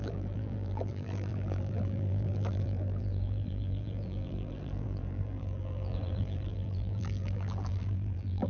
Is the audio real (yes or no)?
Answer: no